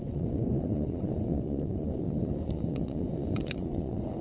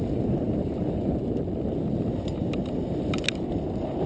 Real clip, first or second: second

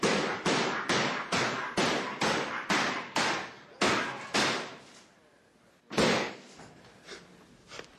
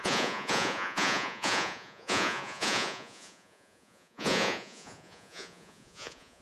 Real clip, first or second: first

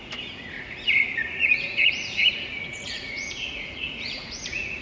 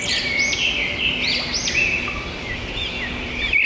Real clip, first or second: second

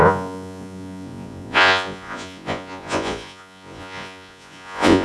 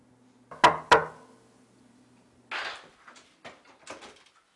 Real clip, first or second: second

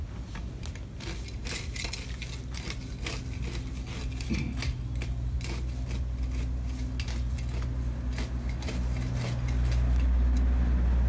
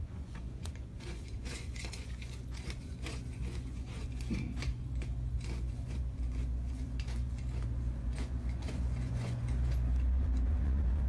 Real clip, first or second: first